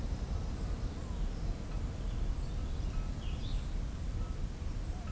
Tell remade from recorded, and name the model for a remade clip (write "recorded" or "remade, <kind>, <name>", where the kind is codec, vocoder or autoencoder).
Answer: recorded